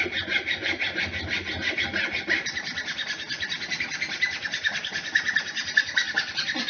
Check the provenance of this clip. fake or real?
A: real